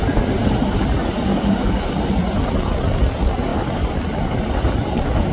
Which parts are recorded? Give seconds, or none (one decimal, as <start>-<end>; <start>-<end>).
0.0-1.3; 1.9-5.3